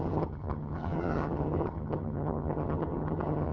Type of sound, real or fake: fake